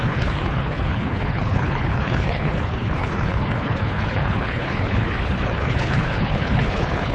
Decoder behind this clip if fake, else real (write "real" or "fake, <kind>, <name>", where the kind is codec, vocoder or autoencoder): fake, codec, HILCodec